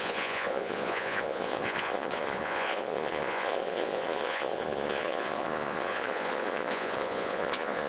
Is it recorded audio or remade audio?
remade